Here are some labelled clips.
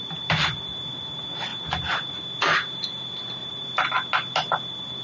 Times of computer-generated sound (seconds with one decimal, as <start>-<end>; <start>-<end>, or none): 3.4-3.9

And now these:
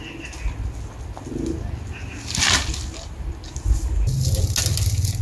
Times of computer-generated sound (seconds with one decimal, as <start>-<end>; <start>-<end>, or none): none

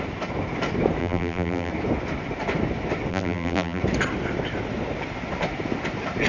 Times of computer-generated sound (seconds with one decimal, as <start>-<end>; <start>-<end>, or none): 1.0-1.7; 3.1-3.8

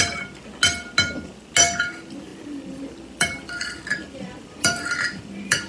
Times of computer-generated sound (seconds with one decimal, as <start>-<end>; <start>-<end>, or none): 2.3-5.7

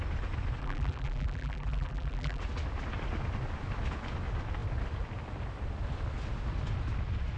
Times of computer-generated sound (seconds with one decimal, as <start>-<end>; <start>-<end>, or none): 0.6-2.4

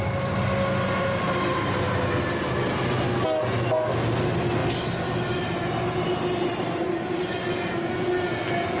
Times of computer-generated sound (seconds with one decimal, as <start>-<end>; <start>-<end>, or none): none

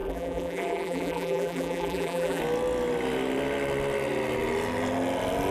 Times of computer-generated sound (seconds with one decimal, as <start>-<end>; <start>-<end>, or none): 0.0-2.4

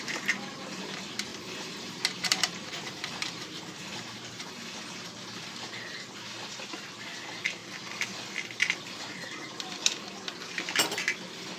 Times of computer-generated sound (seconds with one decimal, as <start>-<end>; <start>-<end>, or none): 1.3-4.5